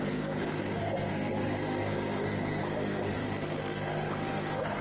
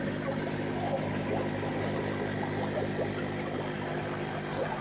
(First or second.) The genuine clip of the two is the second